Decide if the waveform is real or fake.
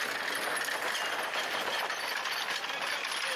fake